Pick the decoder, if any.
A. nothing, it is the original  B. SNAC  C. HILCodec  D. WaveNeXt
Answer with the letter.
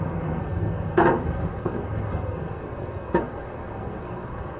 B